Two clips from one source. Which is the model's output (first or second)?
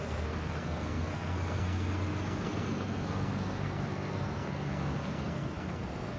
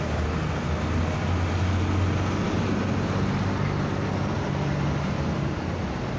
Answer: first